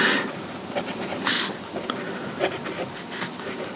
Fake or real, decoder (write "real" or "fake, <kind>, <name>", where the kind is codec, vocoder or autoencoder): real